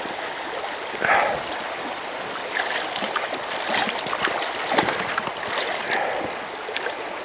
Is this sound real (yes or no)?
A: yes